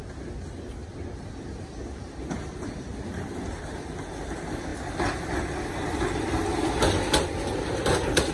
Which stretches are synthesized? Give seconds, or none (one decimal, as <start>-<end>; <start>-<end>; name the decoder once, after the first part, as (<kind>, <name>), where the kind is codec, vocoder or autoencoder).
none